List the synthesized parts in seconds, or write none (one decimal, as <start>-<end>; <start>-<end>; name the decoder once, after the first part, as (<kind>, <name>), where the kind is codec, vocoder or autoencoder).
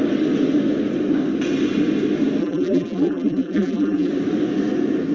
2.4-4.1 (vocoder, BigVGAN v2)